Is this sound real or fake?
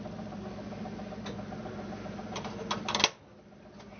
real